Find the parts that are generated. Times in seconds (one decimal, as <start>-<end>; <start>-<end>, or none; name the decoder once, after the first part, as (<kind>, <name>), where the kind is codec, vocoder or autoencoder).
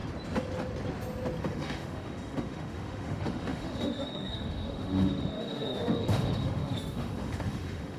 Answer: 1.4-8.0 (autoencoder, DAC-VAE)